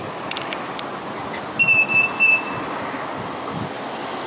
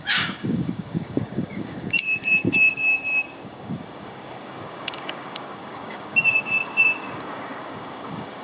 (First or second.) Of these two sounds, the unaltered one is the first